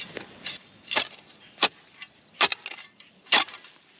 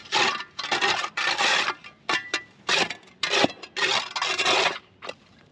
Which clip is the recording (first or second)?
second